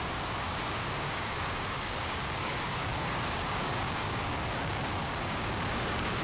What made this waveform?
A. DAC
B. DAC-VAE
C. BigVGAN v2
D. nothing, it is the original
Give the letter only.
A